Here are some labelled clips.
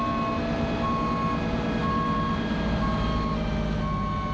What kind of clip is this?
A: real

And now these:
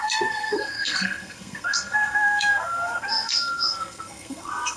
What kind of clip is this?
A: fake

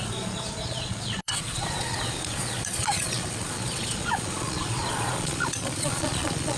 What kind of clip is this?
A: fake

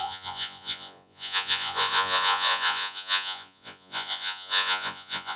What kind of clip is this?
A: fake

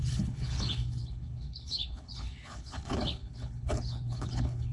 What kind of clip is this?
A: fake